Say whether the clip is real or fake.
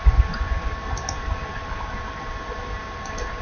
real